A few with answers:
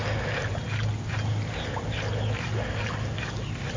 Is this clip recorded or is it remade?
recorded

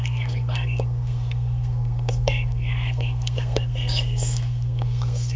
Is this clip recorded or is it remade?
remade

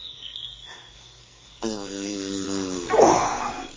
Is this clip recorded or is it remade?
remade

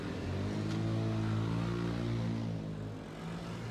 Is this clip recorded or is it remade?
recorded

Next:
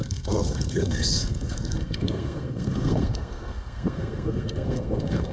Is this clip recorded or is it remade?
remade